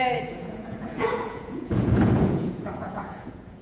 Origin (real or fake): fake